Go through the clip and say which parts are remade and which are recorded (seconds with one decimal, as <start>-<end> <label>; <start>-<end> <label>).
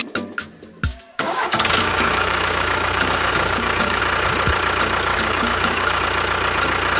0.0-0.9 recorded; 0.9-4.0 remade; 4.0-5.1 recorded; 5.1-6.0 remade; 6.0-7.0 recorded